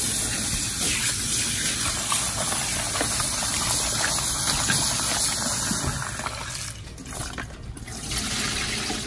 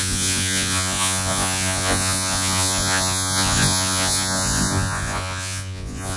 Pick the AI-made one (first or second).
second